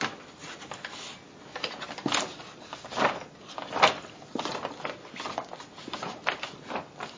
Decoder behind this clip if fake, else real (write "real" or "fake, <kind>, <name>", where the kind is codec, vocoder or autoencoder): real